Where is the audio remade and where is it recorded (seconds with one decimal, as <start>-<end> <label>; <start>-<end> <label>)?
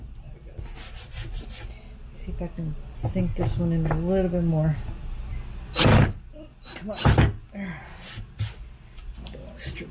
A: 0.0-9.9 recorded